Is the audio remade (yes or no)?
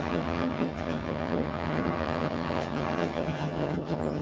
yes